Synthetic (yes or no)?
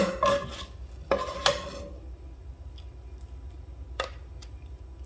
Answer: no